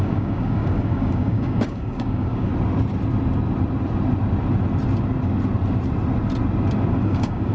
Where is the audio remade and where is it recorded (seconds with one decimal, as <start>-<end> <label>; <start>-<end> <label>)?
0.0-2.5 remade; 2.5-7.0 recorded; 7.0-7.5 remade